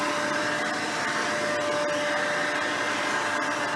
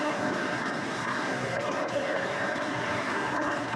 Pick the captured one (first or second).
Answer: first